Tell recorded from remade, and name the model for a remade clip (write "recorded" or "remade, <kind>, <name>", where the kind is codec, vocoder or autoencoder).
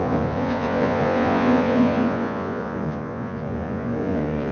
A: remade, vocoder, Vocos